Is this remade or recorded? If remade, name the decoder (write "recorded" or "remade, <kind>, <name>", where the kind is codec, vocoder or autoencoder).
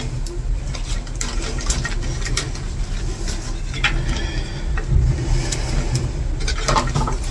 recorded